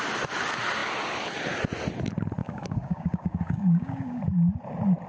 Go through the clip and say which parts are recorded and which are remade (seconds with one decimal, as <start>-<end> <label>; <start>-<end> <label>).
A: 0.0-2.4 recorded; 2.4-4.2 remade; 4.2-5.1 recorded